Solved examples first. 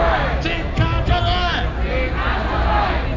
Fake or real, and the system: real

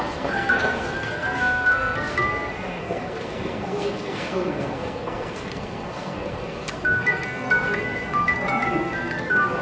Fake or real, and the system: fake, codec, SNAC